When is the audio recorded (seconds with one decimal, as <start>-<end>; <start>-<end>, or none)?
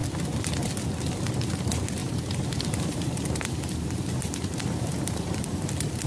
0.0-2.0; 5.4-6.1